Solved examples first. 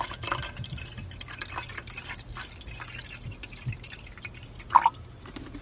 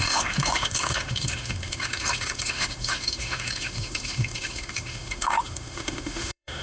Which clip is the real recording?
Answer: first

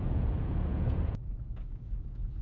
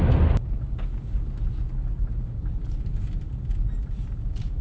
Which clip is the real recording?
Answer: second